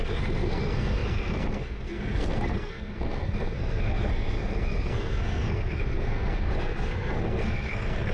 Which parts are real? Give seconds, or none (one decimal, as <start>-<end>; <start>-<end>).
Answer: none